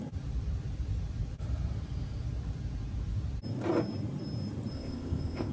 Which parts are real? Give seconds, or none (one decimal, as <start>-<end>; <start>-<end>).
0.0-4.7